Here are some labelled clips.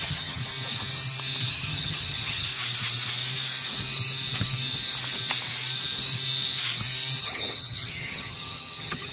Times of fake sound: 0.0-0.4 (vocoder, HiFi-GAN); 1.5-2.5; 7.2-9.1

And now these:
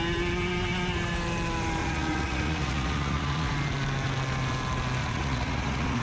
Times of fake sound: 1.8-3.5 (vocoder, Vocos); 5.0-6.0

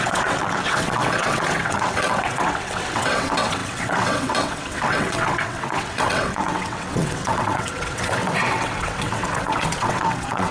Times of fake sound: 0.0-10.5 (vocoder, WaveNeXt)